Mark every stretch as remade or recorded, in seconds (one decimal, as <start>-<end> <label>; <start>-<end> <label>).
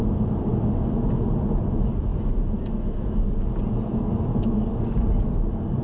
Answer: 0.0-5.8 recorded